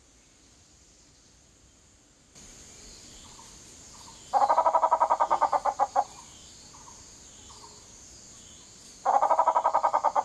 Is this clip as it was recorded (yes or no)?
yes